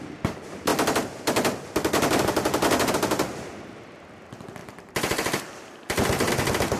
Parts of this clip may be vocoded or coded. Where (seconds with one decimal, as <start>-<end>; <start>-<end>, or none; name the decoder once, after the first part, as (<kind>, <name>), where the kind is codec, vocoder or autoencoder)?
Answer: 4.6-6.3 (vocoder, BigVGAN v2)